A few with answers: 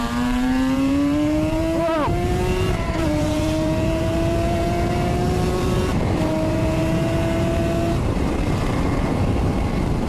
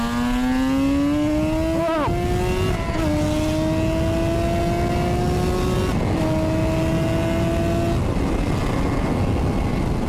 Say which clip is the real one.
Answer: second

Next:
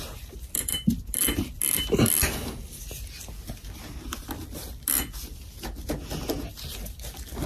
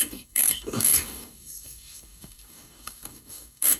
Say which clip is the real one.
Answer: first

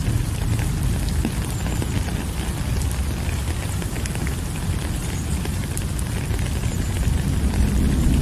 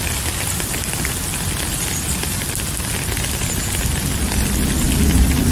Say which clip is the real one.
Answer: second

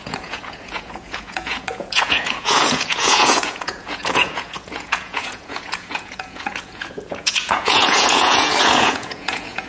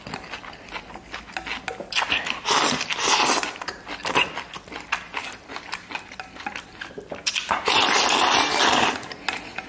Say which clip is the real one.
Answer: second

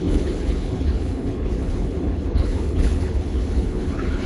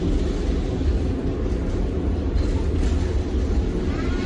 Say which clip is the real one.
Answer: second